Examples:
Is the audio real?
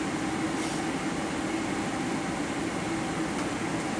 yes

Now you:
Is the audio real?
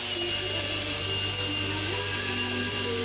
yes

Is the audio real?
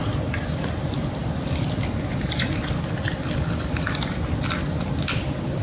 yes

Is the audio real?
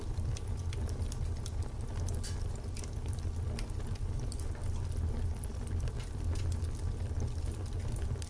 yes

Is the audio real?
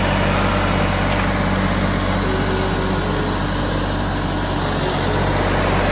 yes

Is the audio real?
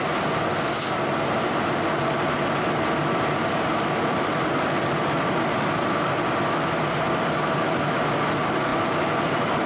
yes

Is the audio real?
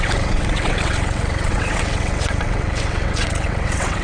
no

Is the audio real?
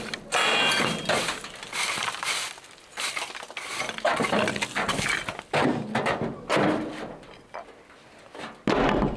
yes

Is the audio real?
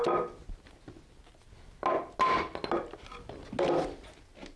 yes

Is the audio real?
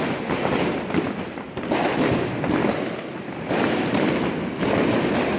yes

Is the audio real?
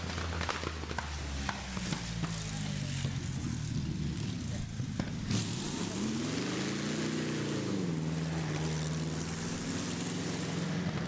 yes